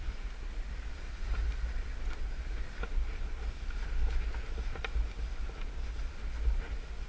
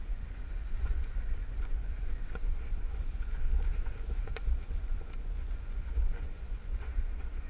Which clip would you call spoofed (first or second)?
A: second